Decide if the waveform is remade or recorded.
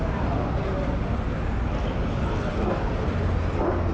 recorded